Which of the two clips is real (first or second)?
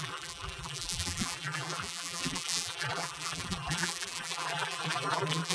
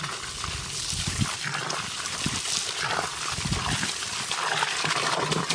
second